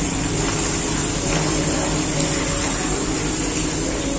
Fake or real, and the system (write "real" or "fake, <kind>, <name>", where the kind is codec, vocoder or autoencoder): real